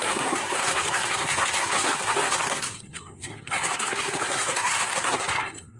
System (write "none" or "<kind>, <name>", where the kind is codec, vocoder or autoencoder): codec, SNAC